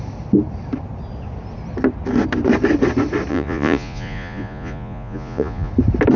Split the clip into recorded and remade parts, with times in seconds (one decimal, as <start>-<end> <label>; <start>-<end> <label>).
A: 0.0-3.3 recorded; 3.3-5.7 remade; 5.7-6.2 recorded